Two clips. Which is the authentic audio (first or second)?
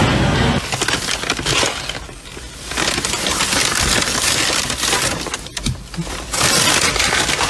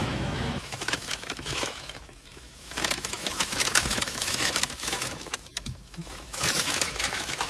first